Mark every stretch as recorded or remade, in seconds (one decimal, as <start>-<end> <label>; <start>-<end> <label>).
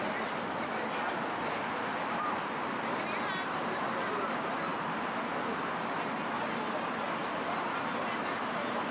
0.0-8.9 recorded